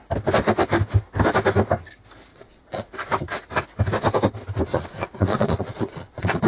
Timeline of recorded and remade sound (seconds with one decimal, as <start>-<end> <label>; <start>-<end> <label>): 0.0-2.3 recorded; 2.3-2.9 remade; 2.9-4.7 recorded; 4.7-6.5 remade